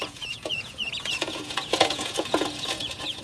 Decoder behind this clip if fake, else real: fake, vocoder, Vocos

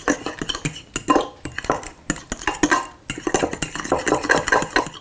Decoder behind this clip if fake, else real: real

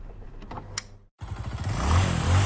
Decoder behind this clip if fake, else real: real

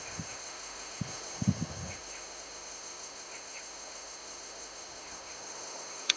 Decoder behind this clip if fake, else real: fake, autoencoder, DAC-VAE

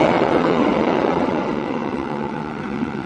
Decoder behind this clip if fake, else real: fake, vocoder, WaveNeXt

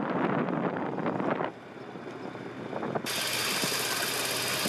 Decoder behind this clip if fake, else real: real